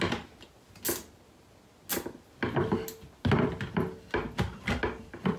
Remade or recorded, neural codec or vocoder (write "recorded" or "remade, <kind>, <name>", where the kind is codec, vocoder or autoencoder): recorded